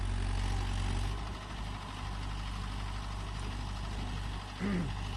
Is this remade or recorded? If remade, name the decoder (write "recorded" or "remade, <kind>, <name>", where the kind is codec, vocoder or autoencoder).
recorded